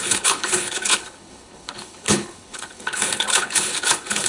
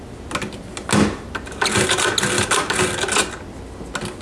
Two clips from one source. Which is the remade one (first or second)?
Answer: first